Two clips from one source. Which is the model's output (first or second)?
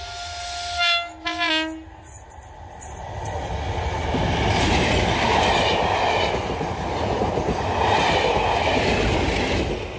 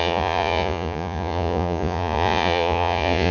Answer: second